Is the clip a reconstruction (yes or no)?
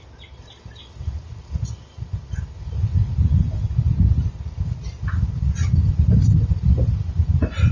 no